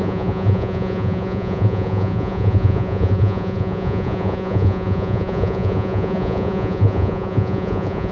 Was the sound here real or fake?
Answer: fake